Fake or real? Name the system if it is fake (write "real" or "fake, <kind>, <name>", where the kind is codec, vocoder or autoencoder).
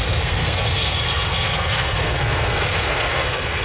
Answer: fake, codec, SNAC